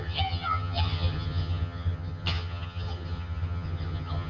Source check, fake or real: fake